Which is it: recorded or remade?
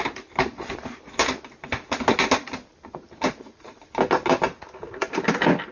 recorded